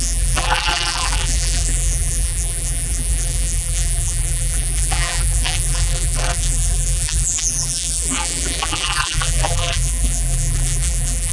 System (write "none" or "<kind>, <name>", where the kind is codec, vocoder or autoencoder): vocoder, BigVGAN v2